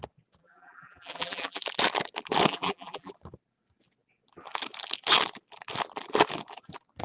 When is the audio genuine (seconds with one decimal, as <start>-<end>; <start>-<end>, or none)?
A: 0.0-0.4; 1.6-2.5; 3.1-7.0